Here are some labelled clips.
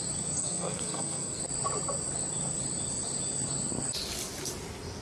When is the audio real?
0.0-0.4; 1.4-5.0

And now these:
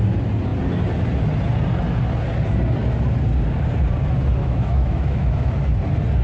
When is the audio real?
0.0-4.4; 5.5-6.2

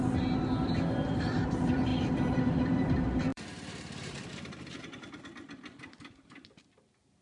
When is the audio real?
0.0-3.3; 4.6-7.2

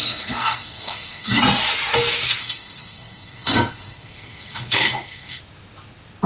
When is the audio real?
1.4-2.4; 5.4-6.3

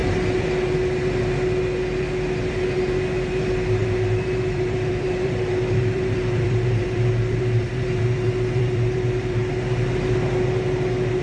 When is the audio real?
0.0-3.3; 9.4-11.2

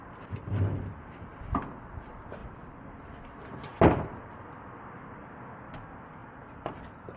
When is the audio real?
0.0-2.4; 3.2-3.7; 4.6-6.2

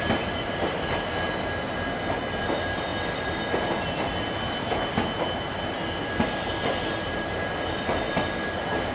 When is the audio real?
0.0-8.9

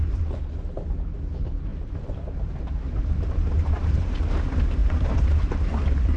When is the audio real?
0.0-1.7; 4.3-4.8; 5.4-6.2